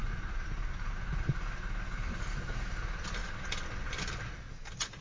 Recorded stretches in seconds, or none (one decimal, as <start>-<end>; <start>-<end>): 1.0-5.0